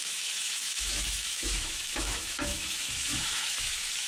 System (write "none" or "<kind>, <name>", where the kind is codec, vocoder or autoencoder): autoencoder, DAC-VAE